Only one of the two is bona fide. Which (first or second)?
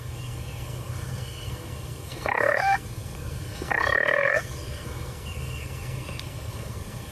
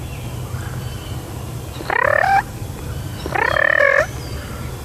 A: second